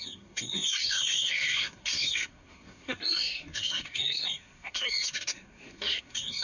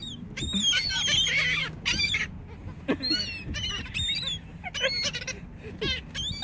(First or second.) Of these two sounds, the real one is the second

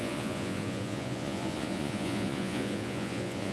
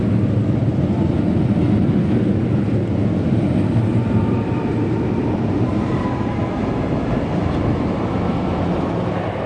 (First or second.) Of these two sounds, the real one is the second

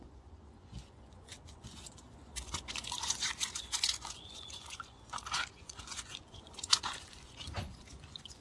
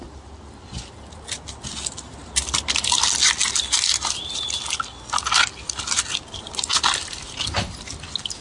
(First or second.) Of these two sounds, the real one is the second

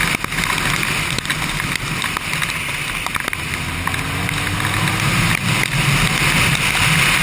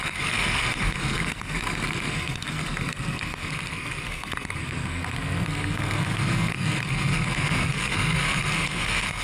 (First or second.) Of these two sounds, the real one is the first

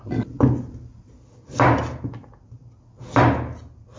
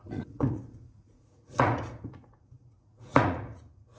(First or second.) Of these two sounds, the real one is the first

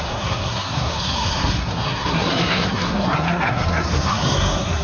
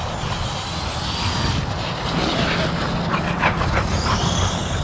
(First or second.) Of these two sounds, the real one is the second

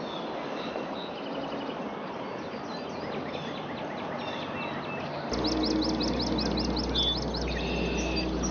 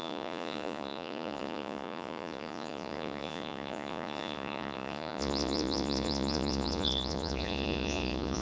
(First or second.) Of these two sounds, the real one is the first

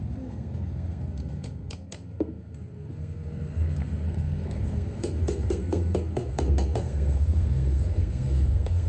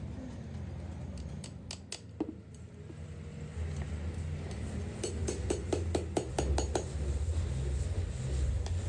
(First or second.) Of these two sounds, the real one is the second